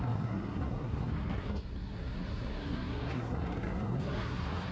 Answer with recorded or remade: remade